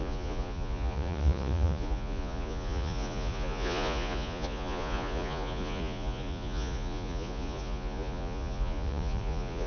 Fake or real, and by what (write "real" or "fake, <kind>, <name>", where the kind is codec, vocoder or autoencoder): fake, vocoder, Vocos